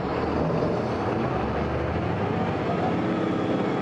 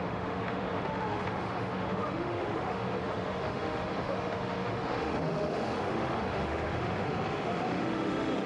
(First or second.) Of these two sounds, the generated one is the second